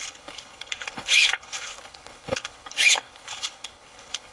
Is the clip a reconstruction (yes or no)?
yes